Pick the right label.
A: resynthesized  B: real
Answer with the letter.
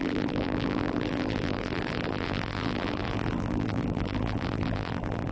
A